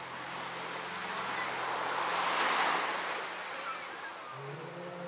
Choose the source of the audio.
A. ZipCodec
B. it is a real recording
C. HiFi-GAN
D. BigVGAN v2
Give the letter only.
B